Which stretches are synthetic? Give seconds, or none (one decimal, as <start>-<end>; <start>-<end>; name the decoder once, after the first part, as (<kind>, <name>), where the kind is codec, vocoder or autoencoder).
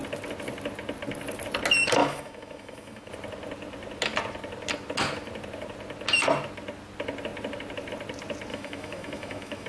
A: 2.0-3.1 (autoencoder, DAC-VAE); 8.5-9.7